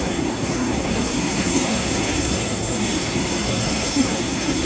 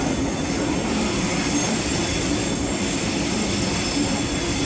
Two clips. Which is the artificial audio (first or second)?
first